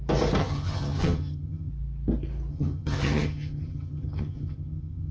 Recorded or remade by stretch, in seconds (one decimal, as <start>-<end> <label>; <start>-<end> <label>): 0.0-0.4 recorded; 0.4-1.7 remade; 1.7-2.5 recorded; 2.5-5.1 remade